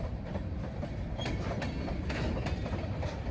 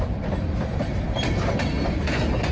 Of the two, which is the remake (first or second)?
first